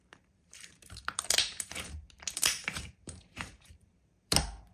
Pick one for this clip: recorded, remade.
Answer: remade